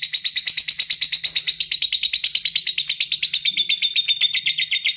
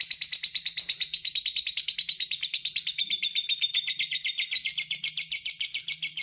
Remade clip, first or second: second